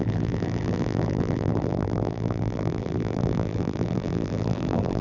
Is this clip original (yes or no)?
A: no